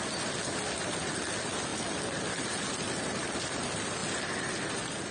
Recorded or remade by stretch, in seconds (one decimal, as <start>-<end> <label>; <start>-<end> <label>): 0.0-5.1 recorded

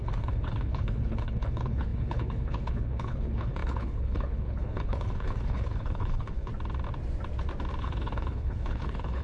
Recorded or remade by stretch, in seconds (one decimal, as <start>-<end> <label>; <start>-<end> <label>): 0.0-6.5 remade; 6.5-7.8 recorded; 7.8-9.2 remade

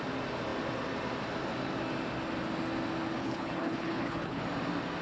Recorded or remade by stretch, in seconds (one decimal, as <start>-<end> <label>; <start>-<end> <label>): 0.0-3.2 recorded; 3.2-4.4 remade; 4.4-5.0 recorded

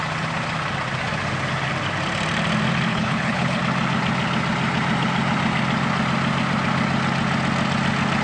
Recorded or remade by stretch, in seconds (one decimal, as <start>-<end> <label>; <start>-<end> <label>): 0.0-2.9 recorded; 2.9-3.6 remade; 3.6-8.2 recorded

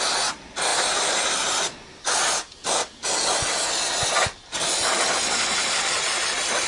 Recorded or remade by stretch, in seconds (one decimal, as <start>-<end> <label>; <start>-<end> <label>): 0.0-6.7 recorded

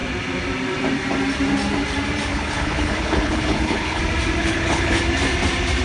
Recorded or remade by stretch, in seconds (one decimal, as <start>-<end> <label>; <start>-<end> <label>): 0.0-2.3 recorded; 2.3-4.0 remade; 4.0-4.4 recorded; 4.4-5.0 remade; 5.0-5.8 recorded